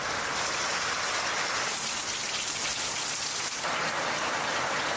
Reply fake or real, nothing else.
real